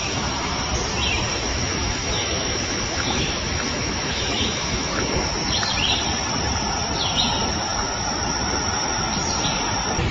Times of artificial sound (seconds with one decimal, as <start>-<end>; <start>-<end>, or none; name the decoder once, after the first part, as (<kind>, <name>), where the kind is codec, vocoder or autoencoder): 0.0-0.6 (autoencoder, DAC-VAE); 1.3-5.3